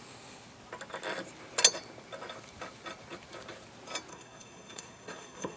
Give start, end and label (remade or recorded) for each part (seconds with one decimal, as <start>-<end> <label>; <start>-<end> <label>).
0.0-4.1 recorded; 4.1-5.6 remade